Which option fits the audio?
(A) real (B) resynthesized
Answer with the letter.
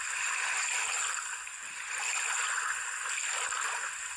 A